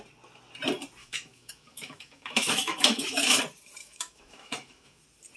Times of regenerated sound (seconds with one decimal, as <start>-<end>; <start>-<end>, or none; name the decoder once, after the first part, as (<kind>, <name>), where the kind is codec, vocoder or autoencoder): 1.0-3.4 (autoencoder, DAC-VAE); 3.8-5.0